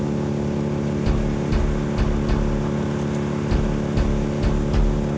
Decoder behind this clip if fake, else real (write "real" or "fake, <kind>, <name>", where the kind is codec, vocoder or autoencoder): real